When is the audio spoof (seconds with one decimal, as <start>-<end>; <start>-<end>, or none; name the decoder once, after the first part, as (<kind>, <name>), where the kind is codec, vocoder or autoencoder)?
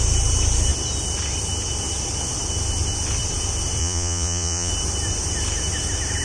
3.8-4.7 (vocoder, Vocos)